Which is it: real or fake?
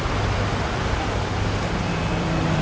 real